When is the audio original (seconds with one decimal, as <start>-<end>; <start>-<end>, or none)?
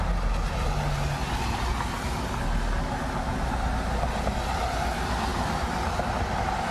0.0-6.7